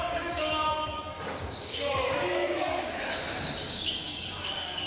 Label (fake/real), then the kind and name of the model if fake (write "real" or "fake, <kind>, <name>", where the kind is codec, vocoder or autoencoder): fake, codec, DAC